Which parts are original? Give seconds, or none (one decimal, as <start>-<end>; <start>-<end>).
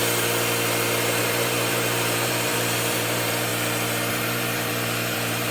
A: 0.0-1.2; 3.5-4.1